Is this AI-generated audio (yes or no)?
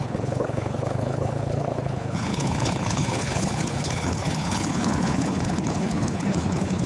yes